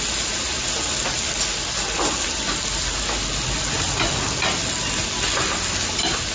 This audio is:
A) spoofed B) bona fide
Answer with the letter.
B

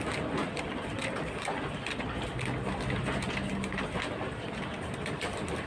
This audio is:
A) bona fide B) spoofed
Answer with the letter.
A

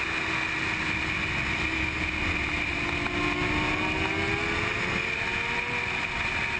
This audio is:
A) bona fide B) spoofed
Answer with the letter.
A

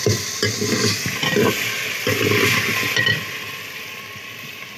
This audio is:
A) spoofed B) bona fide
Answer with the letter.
B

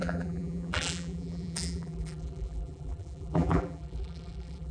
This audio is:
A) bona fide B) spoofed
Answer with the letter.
B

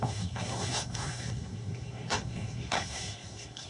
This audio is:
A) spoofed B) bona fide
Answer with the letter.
A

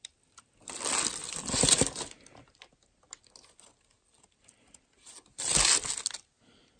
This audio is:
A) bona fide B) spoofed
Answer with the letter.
A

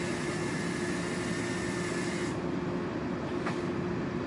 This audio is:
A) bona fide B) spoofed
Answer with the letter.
A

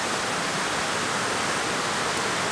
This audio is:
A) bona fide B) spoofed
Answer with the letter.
A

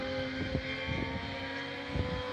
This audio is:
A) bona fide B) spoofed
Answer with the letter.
A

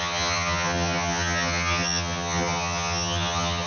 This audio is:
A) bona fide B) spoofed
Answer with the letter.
B